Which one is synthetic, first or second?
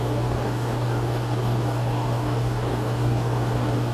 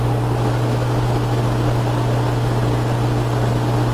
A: first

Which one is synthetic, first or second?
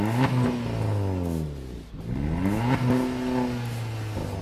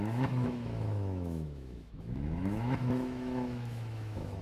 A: second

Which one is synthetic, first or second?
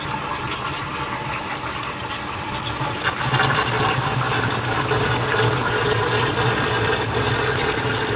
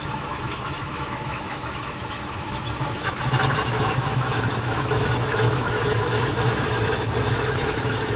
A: second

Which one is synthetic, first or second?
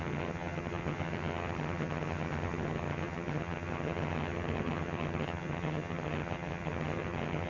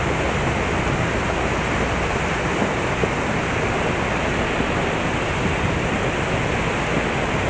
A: first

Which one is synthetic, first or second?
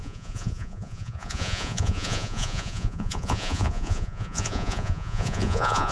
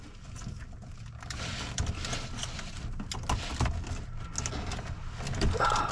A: first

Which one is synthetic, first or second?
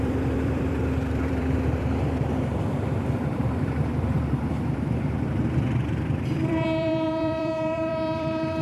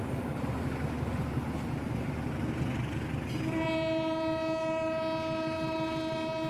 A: first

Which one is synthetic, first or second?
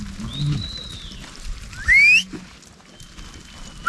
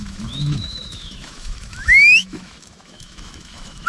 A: second